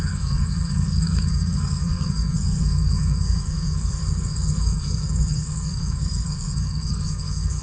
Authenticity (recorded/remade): remade